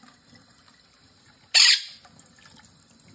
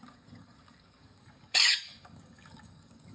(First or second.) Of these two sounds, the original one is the first